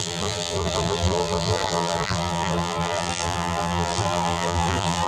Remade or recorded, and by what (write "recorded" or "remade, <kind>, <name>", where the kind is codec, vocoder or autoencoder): remade, vocoder, BigVGAN v2